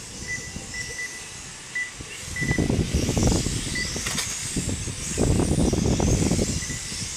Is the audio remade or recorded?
recorded